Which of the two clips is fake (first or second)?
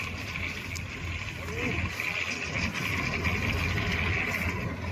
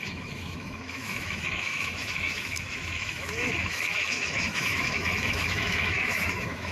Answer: second